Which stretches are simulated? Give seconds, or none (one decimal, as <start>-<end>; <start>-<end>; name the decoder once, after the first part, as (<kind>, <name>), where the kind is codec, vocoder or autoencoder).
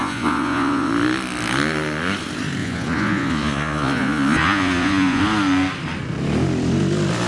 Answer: 0.0-0.9 (vocoder, Vocos); 2.6-5.2